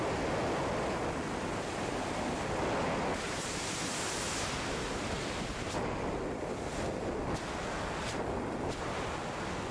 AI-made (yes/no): no